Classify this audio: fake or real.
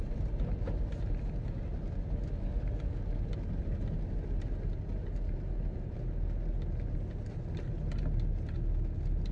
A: real